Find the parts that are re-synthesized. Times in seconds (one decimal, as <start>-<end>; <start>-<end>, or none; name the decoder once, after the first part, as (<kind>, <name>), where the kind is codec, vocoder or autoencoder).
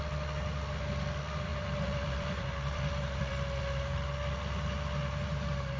1.5-3.6 (vocoder, BigVGAN v2)